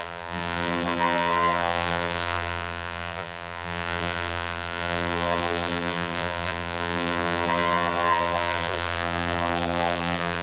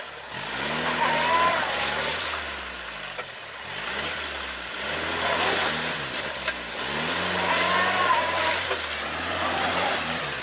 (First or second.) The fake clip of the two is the first